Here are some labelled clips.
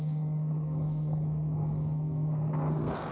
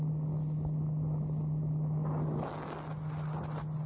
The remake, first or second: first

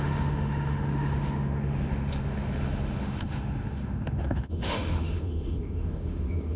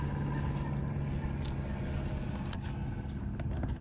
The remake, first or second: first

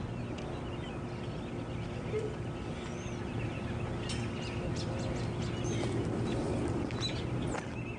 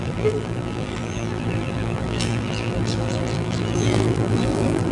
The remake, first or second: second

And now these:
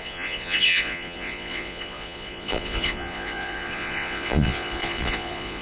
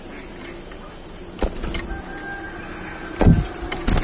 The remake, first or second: first